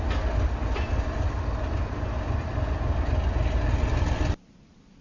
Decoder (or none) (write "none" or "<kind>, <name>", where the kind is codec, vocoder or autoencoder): none